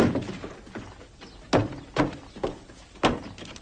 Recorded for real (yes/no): yes